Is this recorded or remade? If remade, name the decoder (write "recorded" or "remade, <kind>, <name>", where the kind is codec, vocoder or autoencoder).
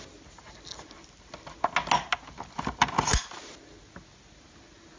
recorded